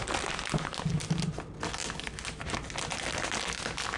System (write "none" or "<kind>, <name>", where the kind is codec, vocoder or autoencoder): none